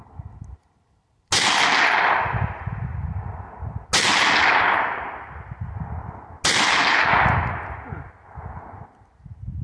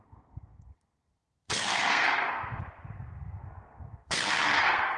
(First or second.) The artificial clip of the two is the second